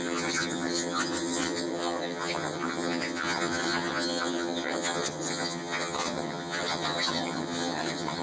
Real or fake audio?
fake